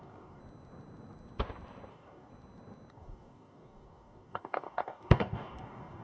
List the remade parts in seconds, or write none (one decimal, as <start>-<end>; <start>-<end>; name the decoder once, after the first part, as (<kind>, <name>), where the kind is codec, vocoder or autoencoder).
0.0-0.4 (codec, DAC); 1.9-2.3; 2.9-6.0